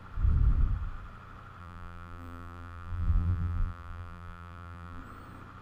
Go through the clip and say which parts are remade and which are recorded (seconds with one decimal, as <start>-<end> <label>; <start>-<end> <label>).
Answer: 0.0-1.6 recorded; 1.6-5.0 remade; 5.0-5.6 recorded